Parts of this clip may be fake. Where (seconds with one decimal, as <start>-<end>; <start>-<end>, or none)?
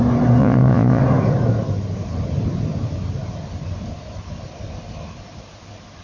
0.4-1.0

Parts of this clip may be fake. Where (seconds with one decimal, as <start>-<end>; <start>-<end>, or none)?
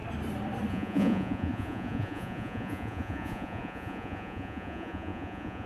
0.7-5.7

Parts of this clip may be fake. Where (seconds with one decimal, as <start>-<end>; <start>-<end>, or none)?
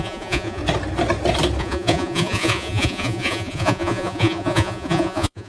0.0-0.6; 1.6-5.5